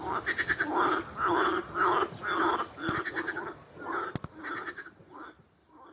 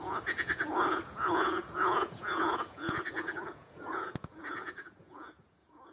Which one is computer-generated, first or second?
second